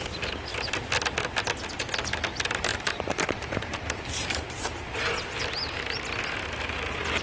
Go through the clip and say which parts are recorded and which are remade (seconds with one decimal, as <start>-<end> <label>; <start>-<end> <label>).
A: 0.0-2.7 recorded; 2.7-5.2 remade; 5.2-7.2 recorded